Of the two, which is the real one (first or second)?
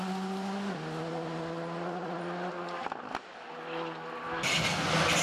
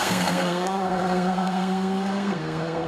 first